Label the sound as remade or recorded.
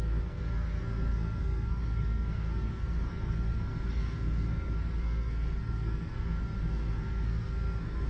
remade